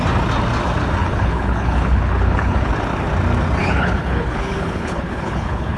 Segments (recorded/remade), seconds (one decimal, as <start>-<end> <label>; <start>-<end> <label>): 0.0-1.0 recorded; 1.0-2.7 remade; 2.7-3.6 recorded; 3.6-5.8 remade